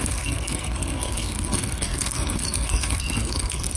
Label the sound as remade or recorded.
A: remade